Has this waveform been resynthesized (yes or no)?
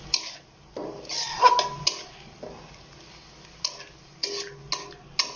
no